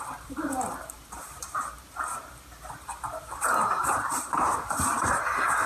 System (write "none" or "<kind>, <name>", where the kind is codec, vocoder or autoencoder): vocoder, BigVGAN v2